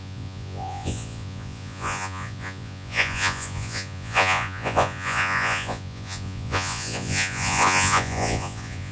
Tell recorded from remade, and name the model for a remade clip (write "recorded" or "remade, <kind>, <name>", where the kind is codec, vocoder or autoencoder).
remade, vocoder, Vocos